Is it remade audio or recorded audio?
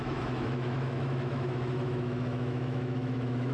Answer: remade